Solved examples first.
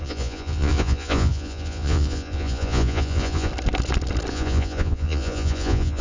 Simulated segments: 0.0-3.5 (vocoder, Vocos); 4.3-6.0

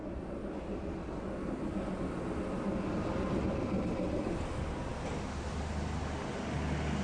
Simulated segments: none

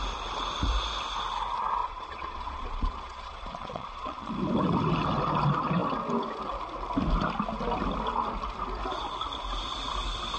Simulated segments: 1.8-4.3 (vocoder, Vocos)

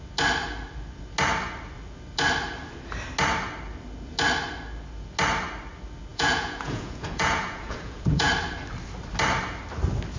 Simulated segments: 6.1-8.3 (vocoder, Vocos)

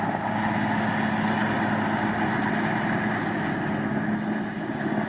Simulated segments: none

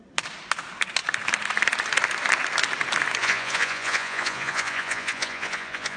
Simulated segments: 3.2-6.0 (vocoder, Vocos)

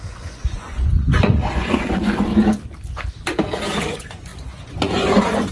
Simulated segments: 0.0-2.3 (vocoder, Vocos); 3.8-5.5

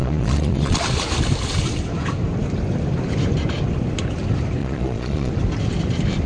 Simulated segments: 0.0-0.8 (vocoder, Vocos); 4.6-5.3